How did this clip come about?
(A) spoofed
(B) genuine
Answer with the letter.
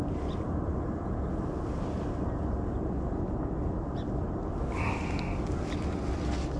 B